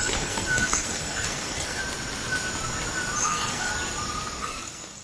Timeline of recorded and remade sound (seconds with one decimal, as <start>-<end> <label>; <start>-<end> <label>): 0.0-1.8 remade; 1.8-3.2 recorded; 3.2-3.7 remade; 3.7-4.4 recorded; 4.4-5.0 remade